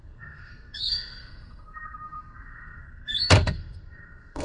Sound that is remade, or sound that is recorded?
remade